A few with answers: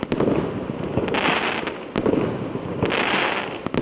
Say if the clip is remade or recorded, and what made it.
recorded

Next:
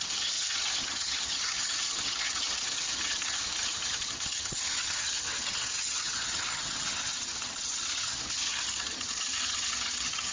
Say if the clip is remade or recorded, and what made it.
remade, vocoder, HiFi-GAN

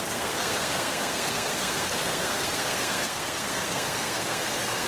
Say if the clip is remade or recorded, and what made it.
remade, codec, SNAC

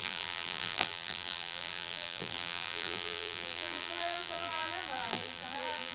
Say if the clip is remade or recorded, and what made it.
remade, vocoder, BigVGAN v2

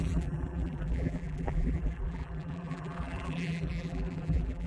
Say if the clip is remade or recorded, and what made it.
remade, vocoder, BigVGAN v2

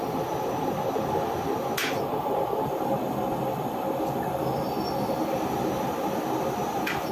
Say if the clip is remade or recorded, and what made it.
recorded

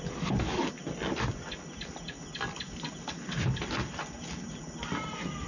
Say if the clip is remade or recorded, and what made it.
recorded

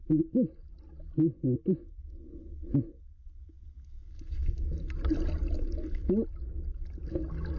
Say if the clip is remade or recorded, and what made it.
recorded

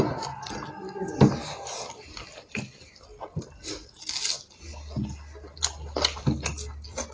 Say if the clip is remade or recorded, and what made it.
recorded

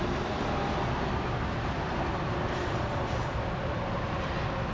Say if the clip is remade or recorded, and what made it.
recorded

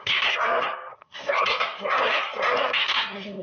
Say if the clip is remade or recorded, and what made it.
remade, codec, SNAC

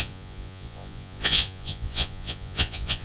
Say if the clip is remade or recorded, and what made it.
remade, vocoder, Vocos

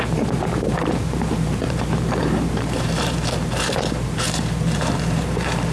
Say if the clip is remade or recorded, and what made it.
remade, vocoder, BigVGAN v2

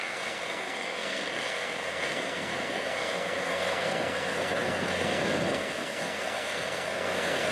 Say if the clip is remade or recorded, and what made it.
remade, codec, SNAC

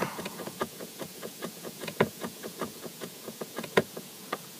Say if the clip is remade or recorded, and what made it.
remade, vocoder, Vocos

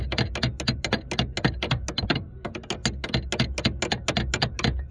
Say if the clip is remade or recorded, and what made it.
recorded